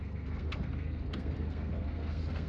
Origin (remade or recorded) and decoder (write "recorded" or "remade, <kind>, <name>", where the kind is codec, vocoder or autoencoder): remade, codec, SNAC